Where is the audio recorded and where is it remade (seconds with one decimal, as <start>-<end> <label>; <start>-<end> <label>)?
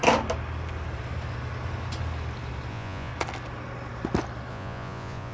0.0-2.7 recorded; 2.7-3.1 remade; 3.1-4.5 recorded; 4.5-5.3 remade